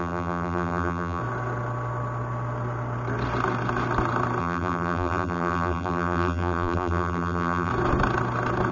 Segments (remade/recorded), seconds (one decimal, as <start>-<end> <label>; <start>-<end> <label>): 0.0-1.2 remade; 1.2-4.4 recorded; 4.4-7.7 remade; 7.7-8.7 recorded